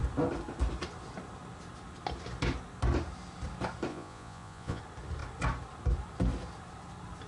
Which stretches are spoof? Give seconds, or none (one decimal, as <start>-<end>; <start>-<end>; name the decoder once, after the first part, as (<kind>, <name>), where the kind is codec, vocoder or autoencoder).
3.9-4.8 (vocoder, Vocos)